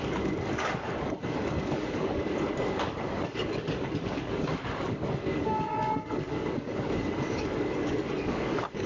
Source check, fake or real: fake